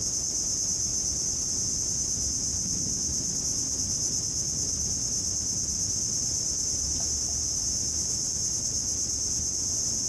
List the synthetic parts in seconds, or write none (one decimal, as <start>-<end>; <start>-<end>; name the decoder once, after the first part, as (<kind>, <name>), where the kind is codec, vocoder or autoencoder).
none